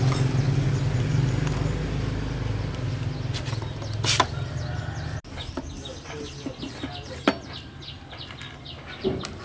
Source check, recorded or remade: recorded